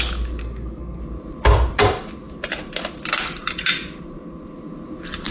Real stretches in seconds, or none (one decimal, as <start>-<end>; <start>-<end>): 0.0-0.4; 1.0-5.3